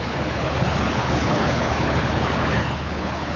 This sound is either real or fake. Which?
fake